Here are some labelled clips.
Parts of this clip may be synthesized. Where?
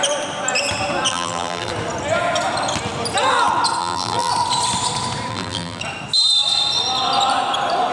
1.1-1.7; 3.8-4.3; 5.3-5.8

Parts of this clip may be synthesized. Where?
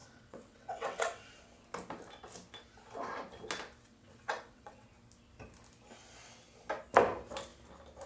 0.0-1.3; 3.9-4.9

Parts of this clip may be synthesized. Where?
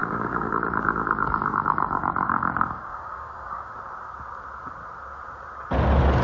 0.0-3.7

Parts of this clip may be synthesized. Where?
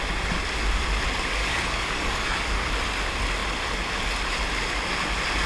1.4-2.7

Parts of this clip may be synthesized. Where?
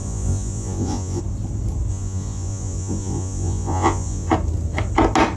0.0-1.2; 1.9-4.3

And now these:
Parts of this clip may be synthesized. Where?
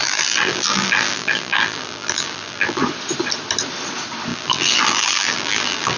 0.0-2.8; 4.3-6.0